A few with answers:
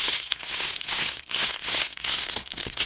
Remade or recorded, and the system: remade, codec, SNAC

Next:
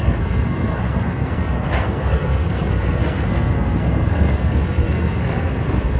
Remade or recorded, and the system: remade, codec, SNAC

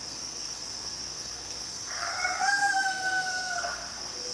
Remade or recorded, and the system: remade, codec, SNAC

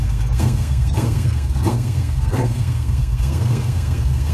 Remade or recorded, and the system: remade, codec, SNAC